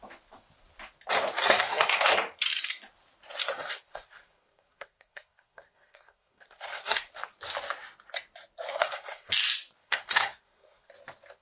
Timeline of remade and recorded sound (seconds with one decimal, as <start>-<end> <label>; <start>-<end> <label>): 0.0-1.4 recorded; 1.4-2.1 remade; 2.1-3.4 recorded; 3.4-7.1 remade; 7.1-8.7 recorded; 8.7-9.3 remade; 9.3-9.8 recorded; 9.8-10.9 remade; 10.9-11.4 recorded